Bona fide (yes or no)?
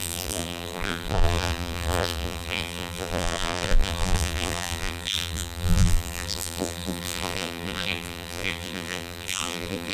no